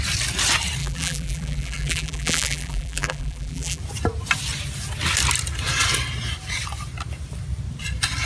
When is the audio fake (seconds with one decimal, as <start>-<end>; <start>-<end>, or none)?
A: 0.8-3.8

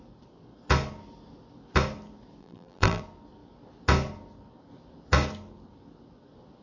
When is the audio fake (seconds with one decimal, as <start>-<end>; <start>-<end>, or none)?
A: 2.4-3.0